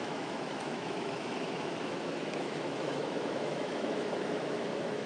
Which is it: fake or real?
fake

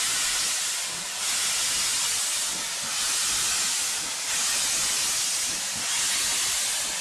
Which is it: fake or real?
real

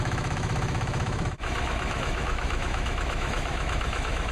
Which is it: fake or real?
fake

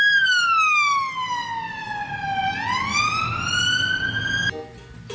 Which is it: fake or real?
real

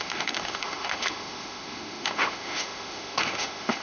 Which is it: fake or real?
fake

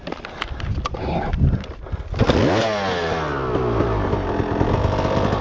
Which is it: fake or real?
real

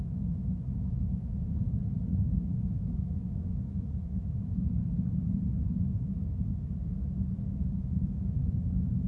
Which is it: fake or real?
fake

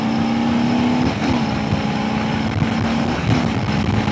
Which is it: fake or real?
real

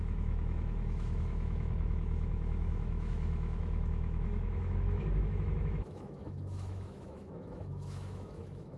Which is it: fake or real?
fake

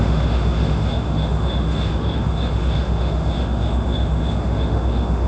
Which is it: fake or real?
fake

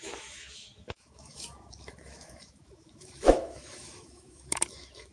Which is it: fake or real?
fake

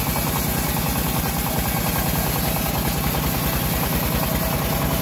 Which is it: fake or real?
real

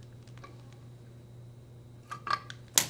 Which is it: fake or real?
real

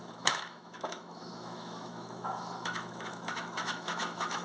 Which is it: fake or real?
fake